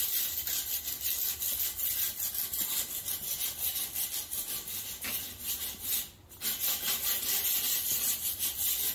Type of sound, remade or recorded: recorded